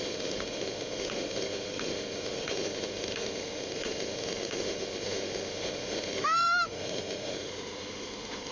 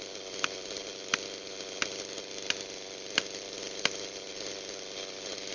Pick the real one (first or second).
second